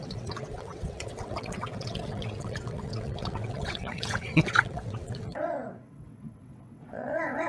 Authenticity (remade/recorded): remade